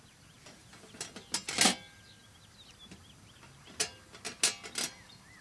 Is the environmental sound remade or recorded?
recorded